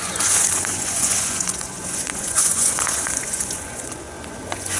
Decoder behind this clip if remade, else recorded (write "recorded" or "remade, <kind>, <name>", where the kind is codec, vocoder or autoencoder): remade, vocoder, Vocos